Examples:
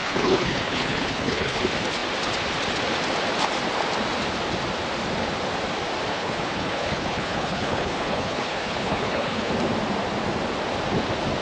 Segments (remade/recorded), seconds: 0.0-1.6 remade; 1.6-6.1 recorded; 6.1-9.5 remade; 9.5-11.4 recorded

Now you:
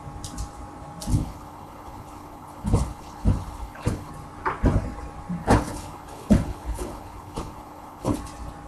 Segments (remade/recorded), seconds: 0.0-1.1 recorded; 1.1-4.1 remade; 4.1-5.4 recorded; 5.4-8.2 remade; 8.2-8.7 recorded

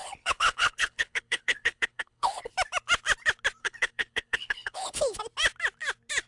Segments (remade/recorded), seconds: 0.0-2.5 remade; 2.5-3.6 recorded; 3.6-5.2 remade; 5.2-6.3 recorded

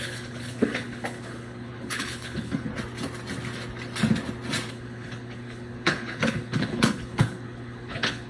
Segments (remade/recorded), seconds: 0.0-2.7 remade; 2.7-4.7 recorded; 4.7-8.3 remade

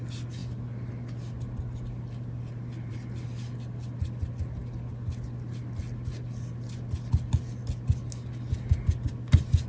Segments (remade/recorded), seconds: 0.0-9.7 recorded

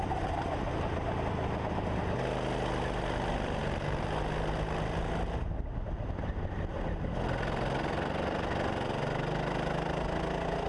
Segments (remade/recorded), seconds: 0.0-10.7 recorded